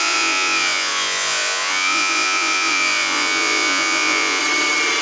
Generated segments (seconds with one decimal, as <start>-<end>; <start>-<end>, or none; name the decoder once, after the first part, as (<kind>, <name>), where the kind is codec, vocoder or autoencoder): 0.0-4.4 (vocoder, Vocos)